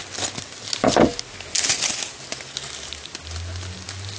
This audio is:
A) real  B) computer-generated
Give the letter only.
A